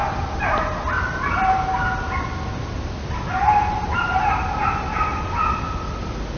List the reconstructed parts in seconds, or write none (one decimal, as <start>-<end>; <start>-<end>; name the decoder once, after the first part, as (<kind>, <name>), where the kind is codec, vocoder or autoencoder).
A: none